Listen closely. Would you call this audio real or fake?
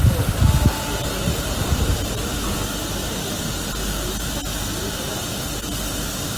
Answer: real